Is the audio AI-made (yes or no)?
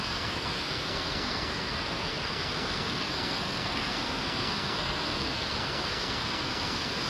yes